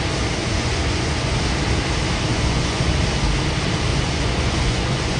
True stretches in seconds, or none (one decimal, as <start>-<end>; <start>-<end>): 0.0-0.4; 1.4-2.3; 2.9-3.9